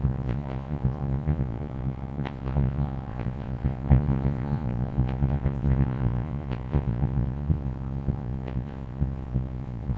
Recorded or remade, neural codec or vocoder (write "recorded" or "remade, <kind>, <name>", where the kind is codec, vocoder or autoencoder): remade, vocoder, Vocos